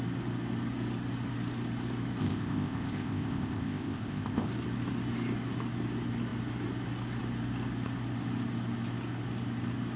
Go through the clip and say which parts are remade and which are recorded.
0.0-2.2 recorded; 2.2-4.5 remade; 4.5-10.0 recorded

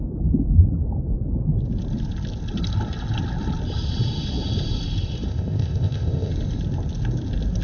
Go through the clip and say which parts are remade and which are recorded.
0.0-5.3 recorded; 5.3-6.3 remade; 6.3-7.6 recorded

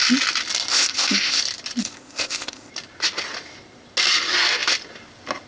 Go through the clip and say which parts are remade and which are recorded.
0.0-0.7 recorded; 0.7-1.4 remade; 1.4-1.8 recorded; 1.8-2.7 remade; 2.7-5.5 recorded

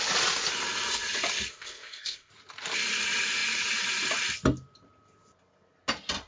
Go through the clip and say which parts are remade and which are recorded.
0.0-1.5 recorded; 1.5-2.3 remade; 2.3-6.3 recorded

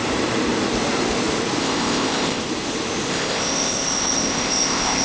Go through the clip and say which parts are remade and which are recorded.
0.0-1.6 recorded; 1.6-2.4 remade; 2.4-3.1 recorded; 3.1-5.0 remade

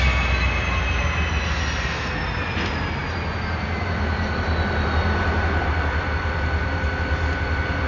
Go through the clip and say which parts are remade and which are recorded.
0.0-7.9 recorded

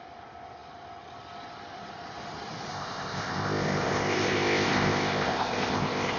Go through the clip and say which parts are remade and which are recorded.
0.0-2.7 recorded; 2.7-6.2 remade